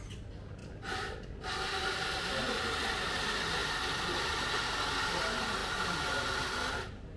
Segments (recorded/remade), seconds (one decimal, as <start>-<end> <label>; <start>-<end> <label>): 0.0-7.2 recorded